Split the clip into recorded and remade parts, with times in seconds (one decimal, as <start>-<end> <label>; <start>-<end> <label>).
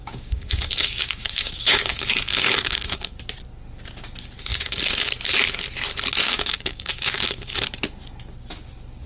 0.0-3.2 remade; 3.2-4.5 recorded; 4.5-5.1 remade; 5.1-6.2 recorded; 6.2-7.6 remade; 7.6-9.1 recorded